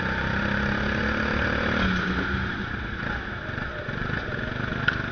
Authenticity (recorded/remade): recorded